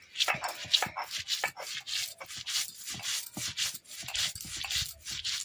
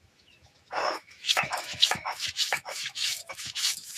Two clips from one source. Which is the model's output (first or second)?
second